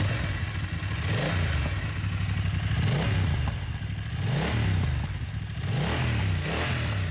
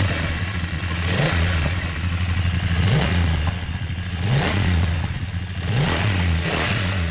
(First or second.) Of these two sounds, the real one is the first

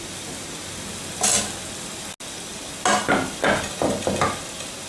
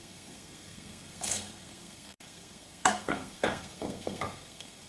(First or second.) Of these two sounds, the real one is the first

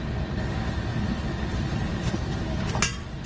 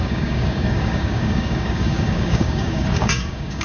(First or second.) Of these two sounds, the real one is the first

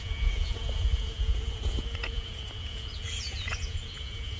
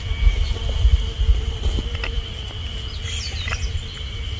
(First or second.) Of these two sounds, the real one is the second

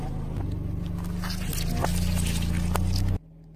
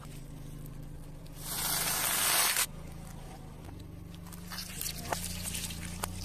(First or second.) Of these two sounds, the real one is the first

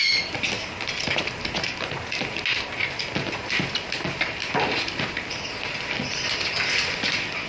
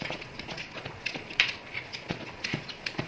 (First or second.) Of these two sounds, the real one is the first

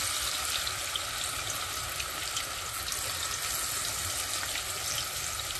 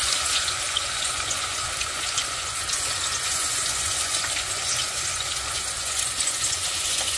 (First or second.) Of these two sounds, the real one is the first